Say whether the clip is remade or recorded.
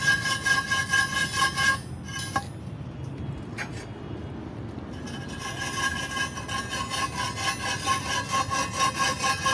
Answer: recorded